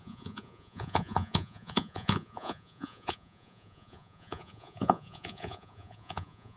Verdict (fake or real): fake